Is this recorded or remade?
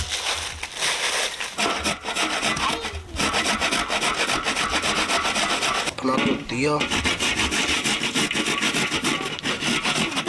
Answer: recorded